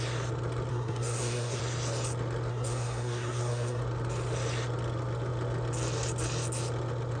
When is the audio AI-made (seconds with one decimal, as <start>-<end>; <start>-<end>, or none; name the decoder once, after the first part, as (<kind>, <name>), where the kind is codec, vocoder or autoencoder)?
0.7-1.6 (codec, SNAC); 2.5-3.8